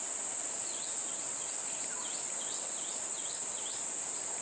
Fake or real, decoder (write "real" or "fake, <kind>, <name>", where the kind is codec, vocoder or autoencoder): real